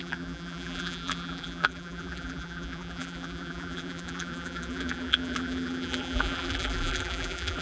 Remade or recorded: remade